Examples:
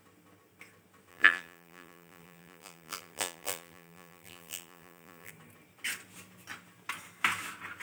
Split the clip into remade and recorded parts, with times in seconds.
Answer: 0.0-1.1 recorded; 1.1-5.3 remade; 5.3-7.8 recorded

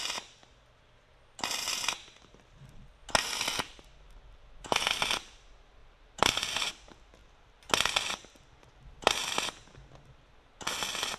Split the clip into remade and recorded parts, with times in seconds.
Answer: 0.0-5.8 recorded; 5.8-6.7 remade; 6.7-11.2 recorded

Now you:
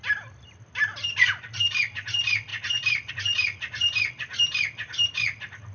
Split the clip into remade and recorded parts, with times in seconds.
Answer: 0.0-5.7 recorded

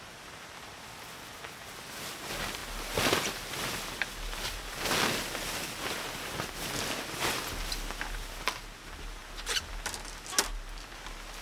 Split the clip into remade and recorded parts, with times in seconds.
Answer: 0.0-11.4 recorded

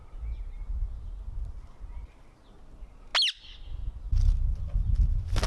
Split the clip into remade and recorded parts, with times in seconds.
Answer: 0.0-5.5 recorded

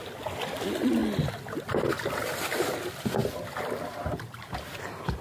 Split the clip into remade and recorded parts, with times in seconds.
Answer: 0.0-1.0 remade; 1.0-1.7 recorded; 1.7-3.2 remade; 3.2-5.2 recorded